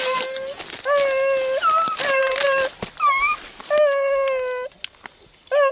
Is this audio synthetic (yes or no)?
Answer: no